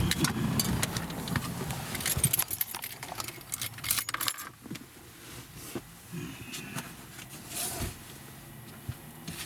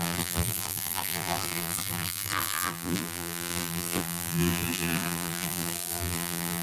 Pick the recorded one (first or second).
first